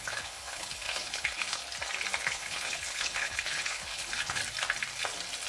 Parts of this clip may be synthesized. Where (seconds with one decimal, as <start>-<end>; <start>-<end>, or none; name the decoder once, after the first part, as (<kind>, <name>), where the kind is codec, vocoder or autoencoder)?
0.0-1.6 (codec, HILCodec); 2.2-4.4